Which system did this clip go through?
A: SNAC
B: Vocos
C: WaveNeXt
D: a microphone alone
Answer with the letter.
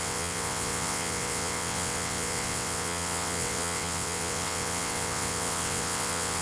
C